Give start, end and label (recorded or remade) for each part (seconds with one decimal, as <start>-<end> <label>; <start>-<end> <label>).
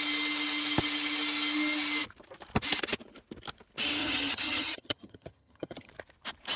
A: 0.0-4.0 recorded; 4.0-5.9 remade; 5.9-6.6 recorded